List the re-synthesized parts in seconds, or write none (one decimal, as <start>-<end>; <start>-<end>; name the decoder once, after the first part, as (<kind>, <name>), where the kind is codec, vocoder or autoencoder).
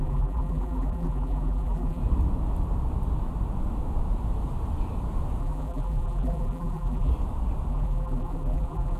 0.0-2.0 (vocoder, BigVGAN v2); 5.4-7.1; 7.7-9.0